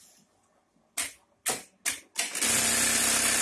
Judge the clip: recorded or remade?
recorded